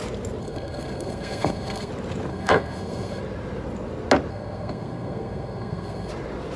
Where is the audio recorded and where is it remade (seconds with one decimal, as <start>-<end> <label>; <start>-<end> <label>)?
0.0-0.4 recorded; 0.4-1.9 remade; 1.9-2.3 recorded; 2.3-3.2 remade; 3.2-4.3 recorded; 4.3-6.1 remade; 6.1-6.6 recorded